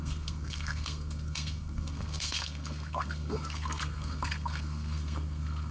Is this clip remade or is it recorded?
remade